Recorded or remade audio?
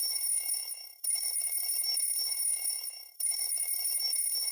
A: remade